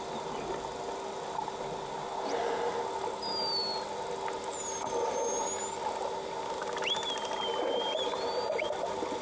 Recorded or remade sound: recorded